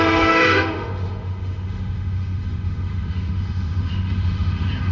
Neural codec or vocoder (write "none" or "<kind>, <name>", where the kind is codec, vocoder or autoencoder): autoencoder, DAC-VAE